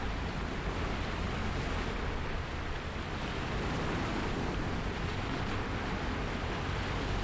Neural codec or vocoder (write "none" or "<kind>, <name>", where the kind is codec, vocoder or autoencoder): none